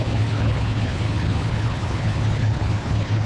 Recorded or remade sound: remade